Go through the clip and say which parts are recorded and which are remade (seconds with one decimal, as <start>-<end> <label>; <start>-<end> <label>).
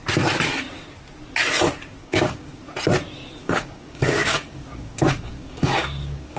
0.0-2.0 recorded; 2.0-2.6 remade; 2.6-3.4 recorded; 3.4-6.4 remade